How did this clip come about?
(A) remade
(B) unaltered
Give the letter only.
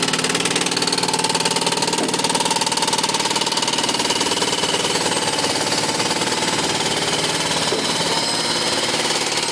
B